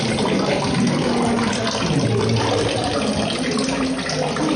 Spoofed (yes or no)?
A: no